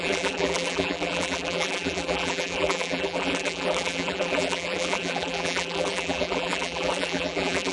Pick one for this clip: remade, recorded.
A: remade